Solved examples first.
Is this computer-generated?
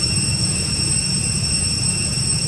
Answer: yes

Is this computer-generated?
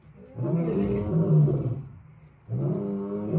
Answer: no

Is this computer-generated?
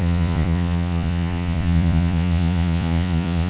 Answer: yes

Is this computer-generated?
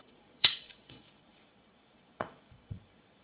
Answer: yes